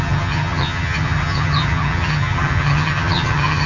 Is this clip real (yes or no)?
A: no